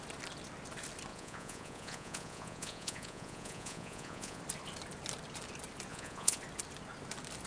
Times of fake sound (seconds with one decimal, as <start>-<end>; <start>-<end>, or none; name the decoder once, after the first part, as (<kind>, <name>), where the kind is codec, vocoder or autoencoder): 1.1-4.4 (vocoder, Vocos); 5.9-6.4